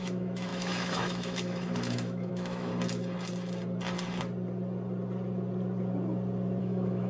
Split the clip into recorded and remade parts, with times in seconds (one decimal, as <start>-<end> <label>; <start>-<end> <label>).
0.0-2.7 remade; 2.7-6.6 recorded; 6.6-7.1 remade